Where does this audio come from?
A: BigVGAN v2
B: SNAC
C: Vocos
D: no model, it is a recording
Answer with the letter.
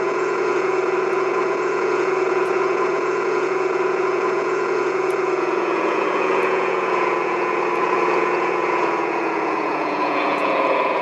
C